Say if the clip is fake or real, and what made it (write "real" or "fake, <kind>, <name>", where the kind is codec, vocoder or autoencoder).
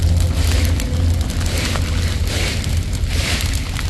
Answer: real